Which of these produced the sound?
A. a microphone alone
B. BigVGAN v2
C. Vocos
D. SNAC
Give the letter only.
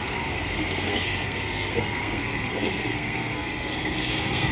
D